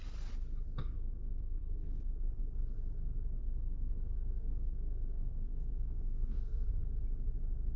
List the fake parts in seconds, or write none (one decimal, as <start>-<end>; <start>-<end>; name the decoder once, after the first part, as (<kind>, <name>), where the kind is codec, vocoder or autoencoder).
0.8-2.1 (codec, SNAC); 3.4-6.8

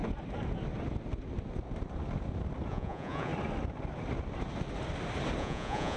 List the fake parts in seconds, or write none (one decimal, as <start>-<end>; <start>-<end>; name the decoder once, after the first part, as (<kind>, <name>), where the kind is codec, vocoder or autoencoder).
2.7-3.3 (vocoder, Vocos); 5.4-6.0

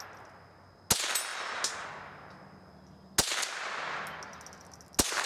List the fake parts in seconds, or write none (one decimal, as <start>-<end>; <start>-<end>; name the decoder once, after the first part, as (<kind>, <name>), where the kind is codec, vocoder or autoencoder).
none

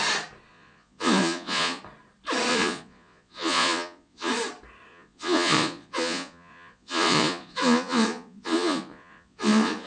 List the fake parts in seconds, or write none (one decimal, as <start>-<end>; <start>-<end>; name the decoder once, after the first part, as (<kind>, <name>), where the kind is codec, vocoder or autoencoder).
0.5-1.8 (vocoder, Vocos); 2.5-4.3; 4.9-9.9

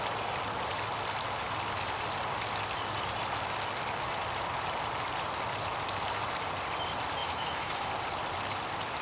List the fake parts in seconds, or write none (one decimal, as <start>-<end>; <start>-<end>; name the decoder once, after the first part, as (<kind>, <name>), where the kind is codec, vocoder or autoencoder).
7.2-7.9 (autoencoder, DAC-VAE)

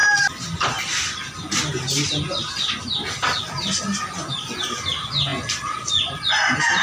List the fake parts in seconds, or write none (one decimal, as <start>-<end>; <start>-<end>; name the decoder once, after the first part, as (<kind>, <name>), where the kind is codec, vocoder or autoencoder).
none

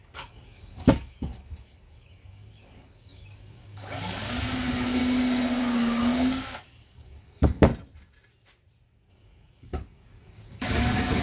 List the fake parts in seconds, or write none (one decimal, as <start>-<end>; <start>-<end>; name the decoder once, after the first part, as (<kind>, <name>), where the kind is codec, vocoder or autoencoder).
0.0-5.0 (codec, DAC); 5.6-7.7; 9.1-11.2